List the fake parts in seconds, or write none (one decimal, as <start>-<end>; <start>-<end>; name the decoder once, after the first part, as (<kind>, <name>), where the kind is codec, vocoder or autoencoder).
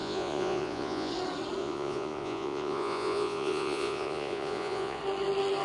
0.0-1.1 (vocoder, Vocos); 1.6-5.0